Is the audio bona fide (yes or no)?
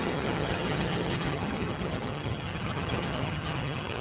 no